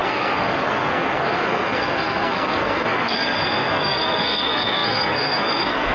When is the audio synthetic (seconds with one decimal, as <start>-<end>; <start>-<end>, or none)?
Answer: 0.0-5.9